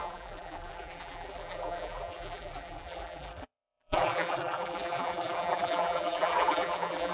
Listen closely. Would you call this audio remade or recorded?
remade